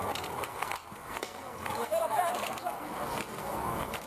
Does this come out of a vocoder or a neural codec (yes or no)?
yes